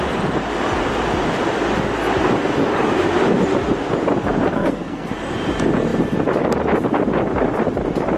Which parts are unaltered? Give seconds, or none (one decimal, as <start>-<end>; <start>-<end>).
0.0-4.5; 5.1-8.2